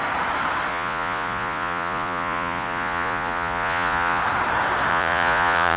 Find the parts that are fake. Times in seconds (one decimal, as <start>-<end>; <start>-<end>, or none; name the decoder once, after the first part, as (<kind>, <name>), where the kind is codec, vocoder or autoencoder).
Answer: 0.7-4.2 (vocoder, Vocos); 4.9-5.8